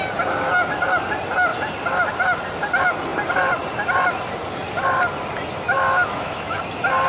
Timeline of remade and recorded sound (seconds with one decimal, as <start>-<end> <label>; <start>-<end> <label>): 0.0-5.5 recorded; 5.5-6.6 remade; 6.6-7.1 recorded